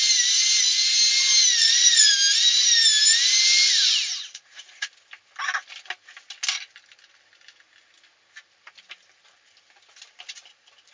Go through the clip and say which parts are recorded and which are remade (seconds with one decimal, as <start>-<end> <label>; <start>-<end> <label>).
0.0-1.6 recorded; 1.6-2.1 remade; 2.1-4.2 recorded; 4.2-4.9 remade; 4.9-10.9 recorded